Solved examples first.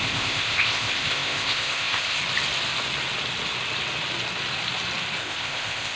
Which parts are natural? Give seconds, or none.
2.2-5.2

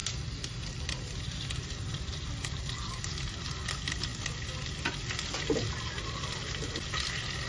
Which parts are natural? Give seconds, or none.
0.0-0.8; 4.1-6.2

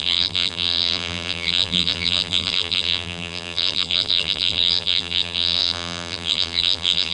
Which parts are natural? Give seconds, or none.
none

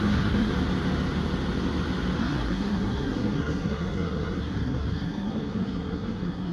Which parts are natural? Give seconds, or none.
0.5-2.2

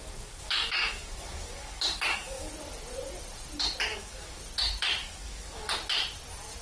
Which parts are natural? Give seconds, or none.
2.5-3.9; 4.4-5.0; 5.7-6.6